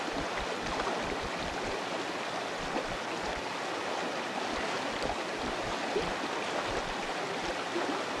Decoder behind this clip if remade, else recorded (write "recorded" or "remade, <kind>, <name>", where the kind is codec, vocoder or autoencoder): recorded